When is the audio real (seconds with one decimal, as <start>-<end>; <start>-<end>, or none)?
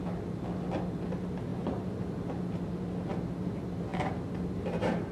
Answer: 0.0-1.5; 2.3-3.9